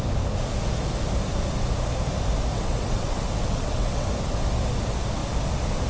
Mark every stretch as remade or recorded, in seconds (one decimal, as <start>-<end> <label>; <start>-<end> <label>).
0.0-2.5 recorded; 2.5-4.1 remade; 4.1-5.9 recorded